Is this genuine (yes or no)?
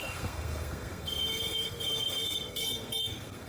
no